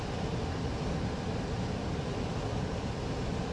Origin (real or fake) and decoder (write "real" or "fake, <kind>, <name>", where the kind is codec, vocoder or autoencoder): real